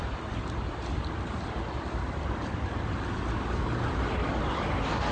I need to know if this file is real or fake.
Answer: real